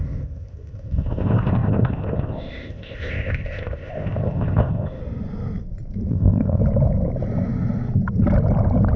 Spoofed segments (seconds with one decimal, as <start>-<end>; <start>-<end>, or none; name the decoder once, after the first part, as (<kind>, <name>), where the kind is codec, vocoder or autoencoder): 0.0-5.0 (codec, ZipCodec); 6.1-6.6